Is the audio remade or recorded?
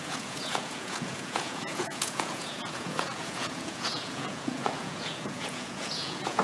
remade